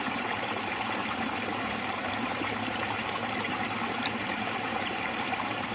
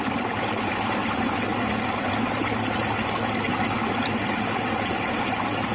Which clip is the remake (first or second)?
first